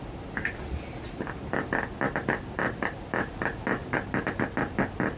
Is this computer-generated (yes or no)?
no